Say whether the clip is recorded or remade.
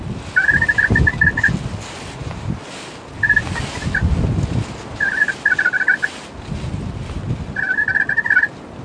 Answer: recorded